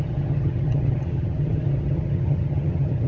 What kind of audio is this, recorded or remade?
remade